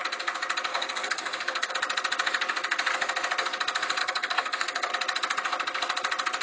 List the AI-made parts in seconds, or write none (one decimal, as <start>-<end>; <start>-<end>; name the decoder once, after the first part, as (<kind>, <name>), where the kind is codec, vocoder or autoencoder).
0.7-1.7 (codec, SNAC); 4.0-4.9